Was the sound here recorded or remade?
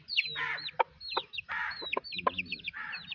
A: remade